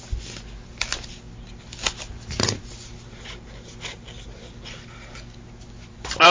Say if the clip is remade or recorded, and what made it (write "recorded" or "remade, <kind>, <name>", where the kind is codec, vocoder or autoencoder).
recorded